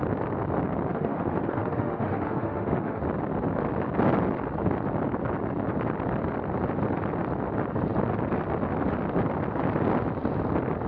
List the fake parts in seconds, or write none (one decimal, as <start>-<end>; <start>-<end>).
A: 0.9-3.0